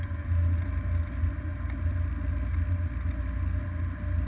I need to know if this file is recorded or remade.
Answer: recorded